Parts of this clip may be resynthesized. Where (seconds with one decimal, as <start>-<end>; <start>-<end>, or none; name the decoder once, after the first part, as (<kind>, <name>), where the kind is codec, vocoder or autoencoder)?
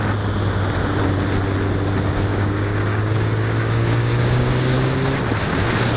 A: 2.3-5.2 (codec, DAC)